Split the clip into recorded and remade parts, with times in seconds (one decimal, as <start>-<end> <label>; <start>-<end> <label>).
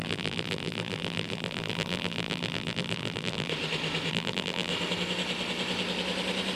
0.0-3.5 remade; 3.5-4.1 recorded; 4.1-4.7 remade; 4.7-6.6 recorded